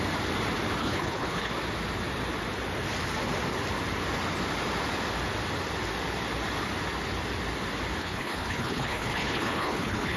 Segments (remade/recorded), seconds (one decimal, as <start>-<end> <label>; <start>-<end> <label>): 0.0-0.8 recorded; 0.8-1.5 remade; 1.5-8.0 recorded; 8.0-10.2 remade